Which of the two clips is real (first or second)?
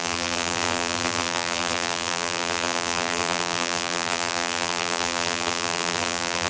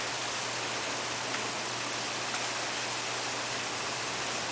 second